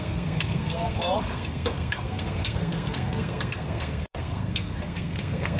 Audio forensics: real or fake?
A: fake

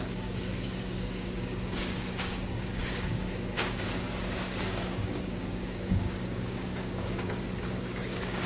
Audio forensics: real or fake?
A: fake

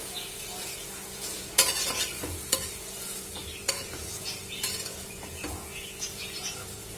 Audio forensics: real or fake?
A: fake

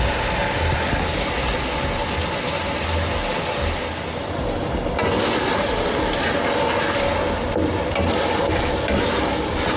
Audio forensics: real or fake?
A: real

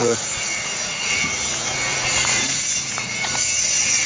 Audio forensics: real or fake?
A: fake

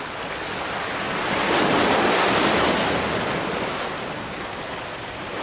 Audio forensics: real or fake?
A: real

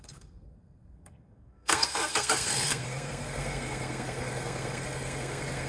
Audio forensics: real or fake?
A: fake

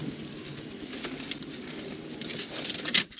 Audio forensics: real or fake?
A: real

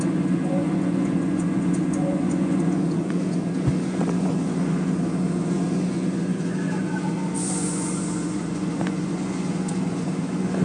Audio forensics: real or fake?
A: fake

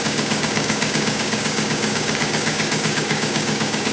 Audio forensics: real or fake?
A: fake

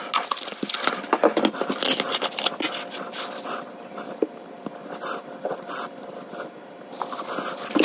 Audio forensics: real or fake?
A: real